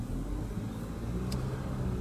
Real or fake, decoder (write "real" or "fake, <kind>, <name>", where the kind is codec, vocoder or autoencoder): real